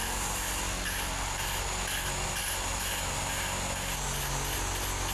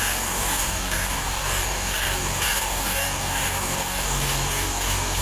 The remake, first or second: second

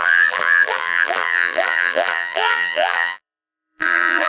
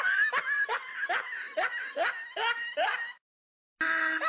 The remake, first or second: first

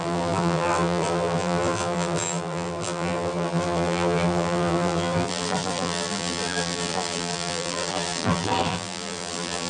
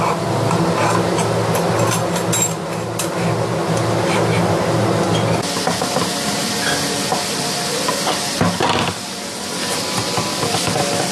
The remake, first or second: first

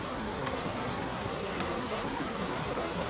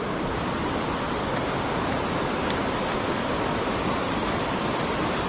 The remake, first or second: first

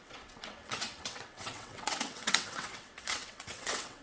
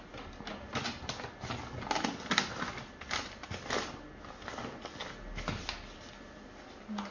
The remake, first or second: first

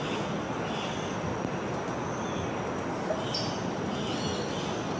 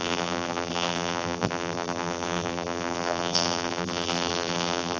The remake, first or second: second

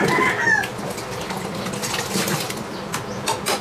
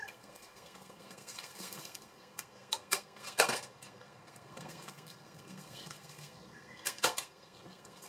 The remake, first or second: second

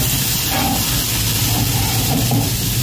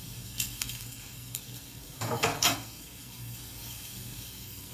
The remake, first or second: second